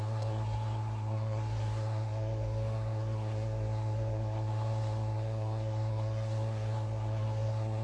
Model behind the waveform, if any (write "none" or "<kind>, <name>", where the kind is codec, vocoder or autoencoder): codec, SNAC